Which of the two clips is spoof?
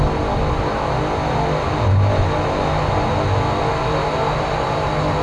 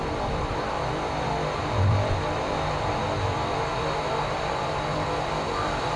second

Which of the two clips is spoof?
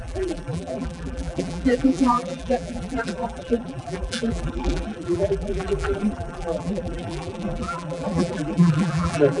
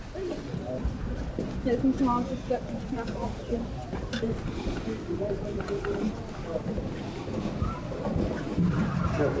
first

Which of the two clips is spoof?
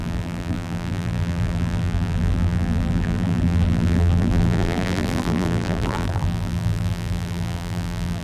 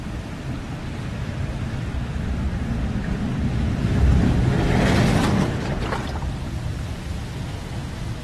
first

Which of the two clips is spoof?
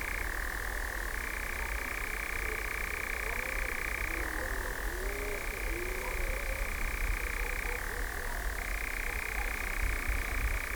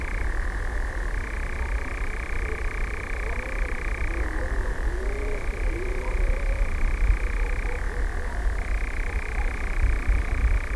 second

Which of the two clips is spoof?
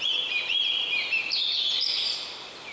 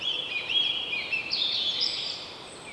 second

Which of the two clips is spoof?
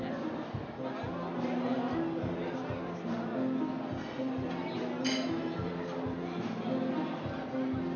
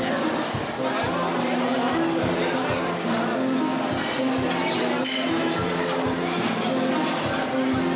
second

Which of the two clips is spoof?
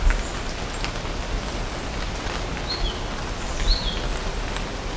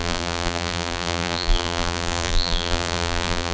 second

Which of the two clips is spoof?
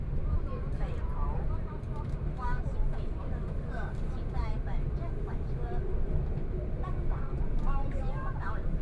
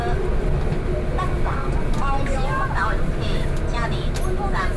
first